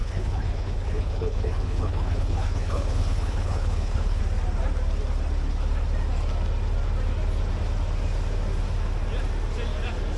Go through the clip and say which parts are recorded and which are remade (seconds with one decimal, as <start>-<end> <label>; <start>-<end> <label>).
0.0-4.2 remade; 4.2-10.2 recorded